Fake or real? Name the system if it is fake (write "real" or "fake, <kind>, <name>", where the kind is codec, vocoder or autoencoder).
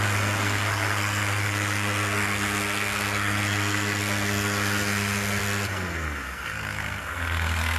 fake, codec, SNAC